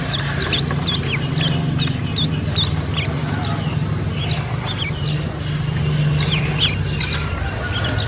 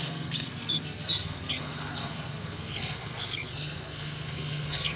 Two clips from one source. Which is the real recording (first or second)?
first